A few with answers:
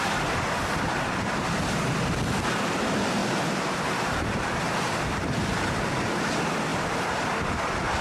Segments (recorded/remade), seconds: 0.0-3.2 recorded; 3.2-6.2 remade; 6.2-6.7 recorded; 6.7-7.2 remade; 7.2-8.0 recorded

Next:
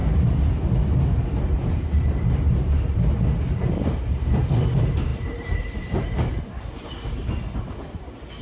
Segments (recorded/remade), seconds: 0.0-3.2 remade; 3.2-5.1 recorded; 5.1-6.9 remade; 6.9-8.4 recorded

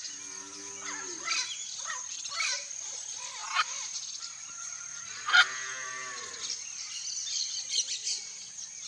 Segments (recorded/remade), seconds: 0.0-8.9 recorded

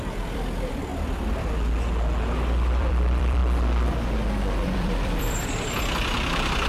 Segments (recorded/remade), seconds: 0.0-0.9 remade; 0.9-2.3 recorded; 2.3-3.4 remade; 3.4-4.6 recorded; 4.6-6.7 remade

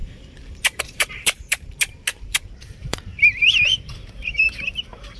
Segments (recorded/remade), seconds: 0.0-1.7 remade; 1.7-2.1 recorded; 2.1-5.2 remade

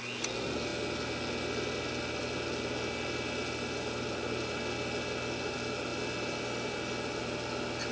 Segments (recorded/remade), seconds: 0.0-7.9 recorded

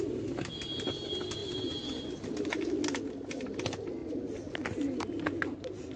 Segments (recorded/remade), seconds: 0.0-6.0 recorded